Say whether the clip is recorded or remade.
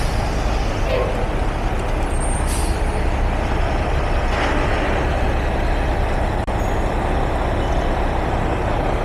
recorded